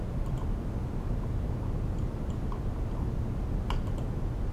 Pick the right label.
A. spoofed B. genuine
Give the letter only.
B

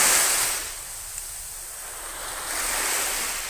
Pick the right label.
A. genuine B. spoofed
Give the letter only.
A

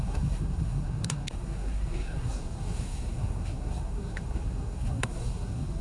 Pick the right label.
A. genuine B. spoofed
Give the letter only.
B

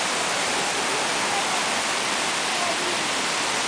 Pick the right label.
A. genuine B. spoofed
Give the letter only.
A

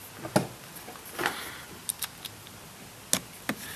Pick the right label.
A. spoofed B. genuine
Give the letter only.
B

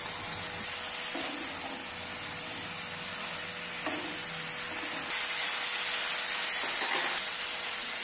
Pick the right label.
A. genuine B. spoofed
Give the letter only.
A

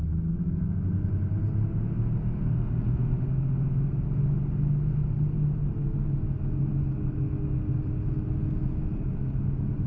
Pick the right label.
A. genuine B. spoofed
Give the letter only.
A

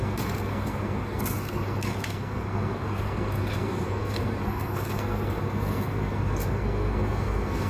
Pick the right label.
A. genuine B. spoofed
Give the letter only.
B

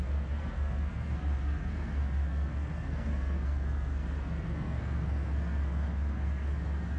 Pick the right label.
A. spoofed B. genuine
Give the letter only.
A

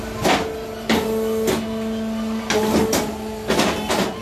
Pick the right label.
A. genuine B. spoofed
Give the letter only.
A